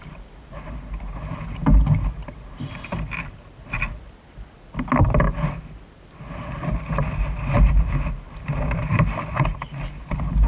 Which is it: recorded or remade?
recorded